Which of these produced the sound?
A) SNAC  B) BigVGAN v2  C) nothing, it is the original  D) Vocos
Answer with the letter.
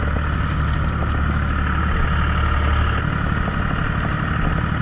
C